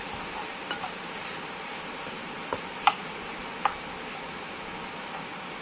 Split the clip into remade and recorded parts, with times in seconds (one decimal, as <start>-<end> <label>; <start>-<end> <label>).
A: 0.0-0.6 recorded; 0.6-3.1 remade; 3.1-5.6 recorded